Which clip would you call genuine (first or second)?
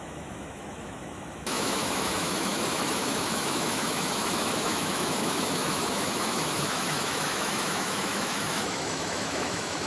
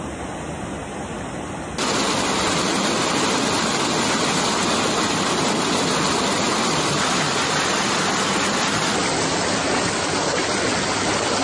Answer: second